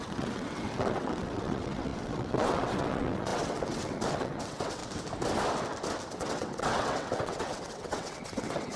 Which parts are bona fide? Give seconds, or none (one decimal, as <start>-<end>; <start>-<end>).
4.8-6.1